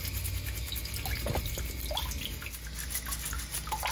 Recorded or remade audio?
recorded